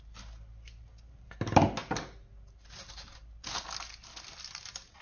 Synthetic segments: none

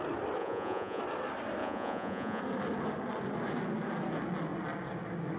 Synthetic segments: 0.4-1.0; 1.6-2.4

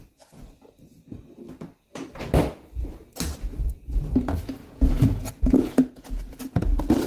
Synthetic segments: 4.6-6.6

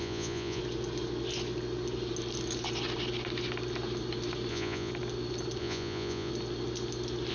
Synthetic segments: 0.0-0.6; 4.5-4.9; 5.6-6.3